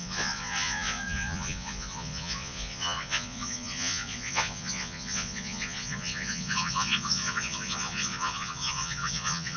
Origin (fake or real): fake